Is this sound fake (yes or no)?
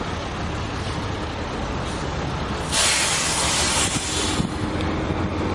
no